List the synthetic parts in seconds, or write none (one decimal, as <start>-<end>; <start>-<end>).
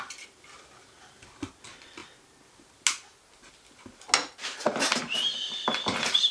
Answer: none